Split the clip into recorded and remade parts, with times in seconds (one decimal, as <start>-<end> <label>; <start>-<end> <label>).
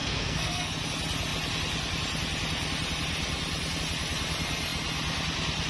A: 0.0-0.7 remade; 0.7-5.7 recorded